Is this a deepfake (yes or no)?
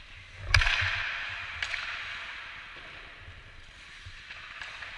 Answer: no